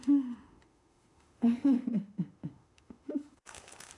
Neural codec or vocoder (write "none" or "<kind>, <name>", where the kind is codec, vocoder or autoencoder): autoencoder, DAC-VAE